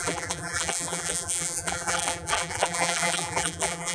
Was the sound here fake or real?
fake